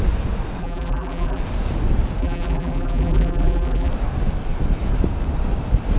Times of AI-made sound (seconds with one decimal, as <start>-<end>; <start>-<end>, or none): 0.6-1.4; 2.2-3.9